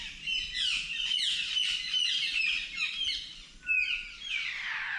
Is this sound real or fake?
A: real